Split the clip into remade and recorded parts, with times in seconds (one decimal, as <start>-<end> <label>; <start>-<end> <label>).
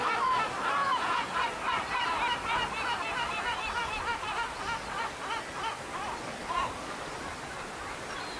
0.0-0.8 recorded; 0.8-1.4 remade; 1.4-8.4 recorded